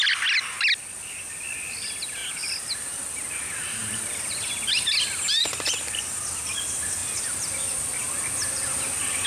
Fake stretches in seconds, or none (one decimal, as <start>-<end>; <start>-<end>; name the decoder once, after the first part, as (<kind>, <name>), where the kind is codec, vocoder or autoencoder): none